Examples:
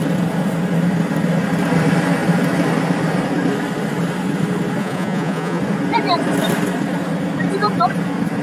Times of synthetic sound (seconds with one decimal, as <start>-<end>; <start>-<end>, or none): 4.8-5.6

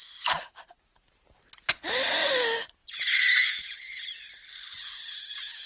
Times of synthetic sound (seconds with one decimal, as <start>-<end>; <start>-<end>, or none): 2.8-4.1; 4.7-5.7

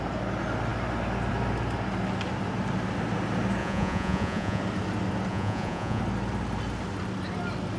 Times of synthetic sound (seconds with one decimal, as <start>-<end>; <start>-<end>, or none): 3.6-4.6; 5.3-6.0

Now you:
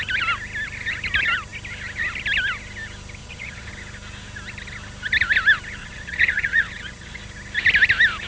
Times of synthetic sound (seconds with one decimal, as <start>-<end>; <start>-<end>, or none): 3.2-3.7; 5.8-7.2

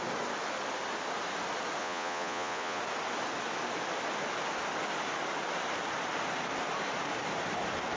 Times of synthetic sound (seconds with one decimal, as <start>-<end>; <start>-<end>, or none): 1.8-2.8